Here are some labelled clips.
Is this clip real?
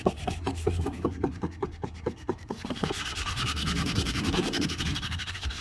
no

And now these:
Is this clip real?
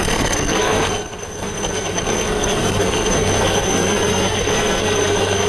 no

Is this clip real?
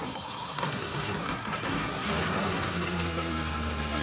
no